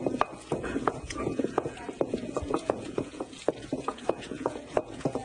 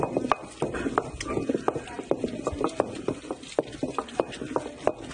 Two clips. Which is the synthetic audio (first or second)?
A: first